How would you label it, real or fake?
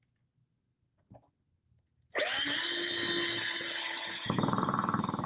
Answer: real